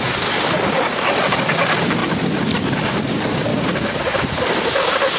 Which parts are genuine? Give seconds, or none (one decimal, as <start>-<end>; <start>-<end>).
0.0-5.2